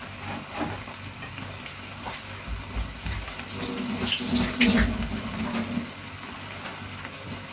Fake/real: real